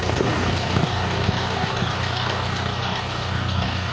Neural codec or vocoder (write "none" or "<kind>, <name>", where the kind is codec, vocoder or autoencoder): codec, DAC